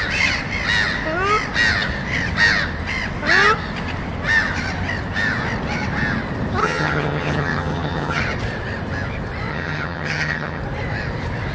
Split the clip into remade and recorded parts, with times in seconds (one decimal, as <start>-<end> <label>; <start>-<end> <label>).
0.0-6.6 recorded; 6.6-8.2 remade; 8.2-9.5 recorded; 9.5-10.6 remade; 10.6-11.5 recorded